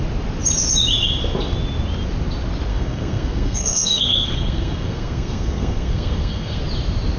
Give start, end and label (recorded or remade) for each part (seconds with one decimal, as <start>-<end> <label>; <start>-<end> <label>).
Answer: 0.0-2.7 recorded; 2.7-6.6 remade; 6.6-7.2 recorded